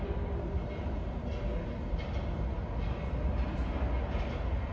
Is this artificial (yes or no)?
no